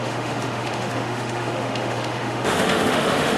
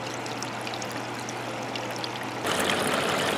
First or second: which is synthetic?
first